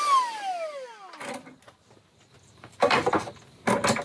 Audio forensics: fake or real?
real